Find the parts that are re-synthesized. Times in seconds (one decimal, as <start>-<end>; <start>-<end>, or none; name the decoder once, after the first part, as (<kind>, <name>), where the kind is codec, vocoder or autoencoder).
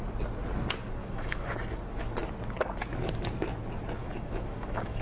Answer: 1.0-1.5 (autoencoder, DAC-VAE); 4.0-5.0